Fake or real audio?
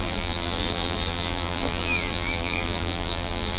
fake